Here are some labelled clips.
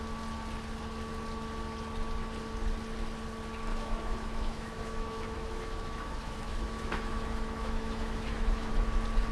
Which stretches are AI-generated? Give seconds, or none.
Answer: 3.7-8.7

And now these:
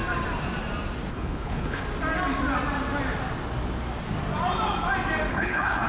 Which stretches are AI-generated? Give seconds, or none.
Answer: 1.1-1.8; 5.3-5.9

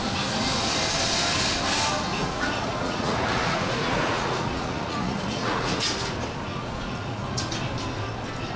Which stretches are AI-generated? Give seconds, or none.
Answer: 2.1-5.8; 6.5-7.4